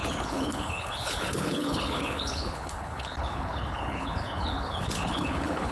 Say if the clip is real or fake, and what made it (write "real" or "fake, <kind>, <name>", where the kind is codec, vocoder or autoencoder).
fake, codec, HILCodec